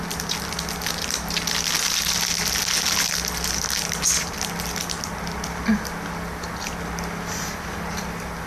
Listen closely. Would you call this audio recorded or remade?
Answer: recorded